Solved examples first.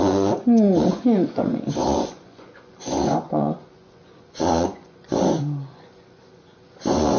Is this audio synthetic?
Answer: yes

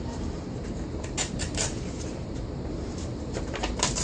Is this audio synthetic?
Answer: yes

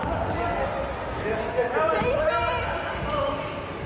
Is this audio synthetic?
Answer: no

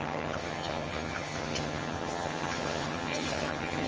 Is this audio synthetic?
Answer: yes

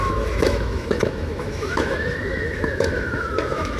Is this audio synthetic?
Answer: yes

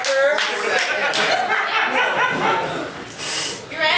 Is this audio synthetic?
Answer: no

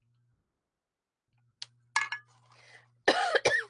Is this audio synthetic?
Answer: no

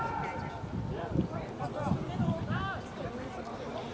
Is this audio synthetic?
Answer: no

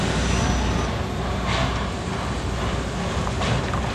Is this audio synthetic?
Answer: no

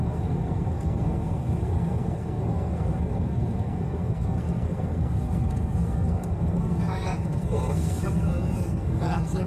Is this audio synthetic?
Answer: yes